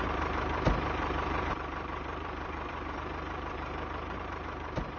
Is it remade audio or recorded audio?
remade